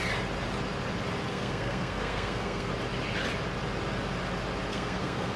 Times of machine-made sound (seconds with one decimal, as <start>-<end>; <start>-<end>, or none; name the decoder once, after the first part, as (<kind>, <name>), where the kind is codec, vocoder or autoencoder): 1.3-2.7 (codec, SNAC); 4.7-5.4